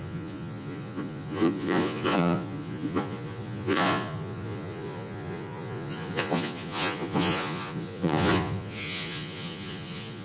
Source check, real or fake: fake